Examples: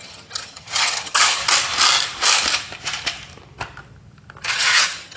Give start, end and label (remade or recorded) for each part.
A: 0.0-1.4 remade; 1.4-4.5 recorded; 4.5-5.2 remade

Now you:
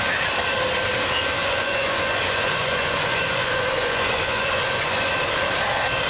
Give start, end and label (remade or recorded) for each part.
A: 0.0-1.4 recorded; 1.4-5.1 remade; 5.1-6.1 recorded

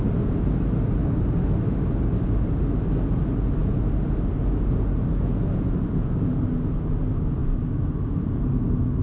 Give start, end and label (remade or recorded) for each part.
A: 0.0-9.0 recorded

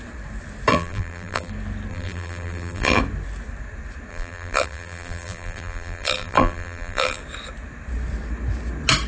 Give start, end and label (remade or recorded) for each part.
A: 0.0-0.7 recorded; 0.7-1.5 remade; 1.5-1.9 recorded; 1.9-3.0 remade; 3.0-4.1 recorded; 4.1-7.2 remade; 7.2-9.1 recorded

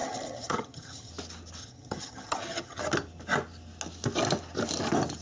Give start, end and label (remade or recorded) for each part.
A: 0.0-1.1 remade; 1.1-1.6 recorded; 1.6-2.8 remade; 2.8-5.2 recorded

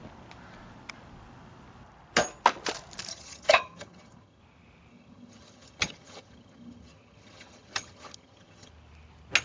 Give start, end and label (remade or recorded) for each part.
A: 0.0-3.1 recorded; 3.1-4.4 remade; 4.4-4.9 recorded; 4.9-8.7 remade; 8.7-9.4 recorded